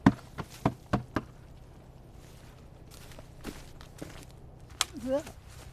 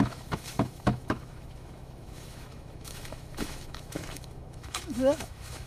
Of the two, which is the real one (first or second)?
first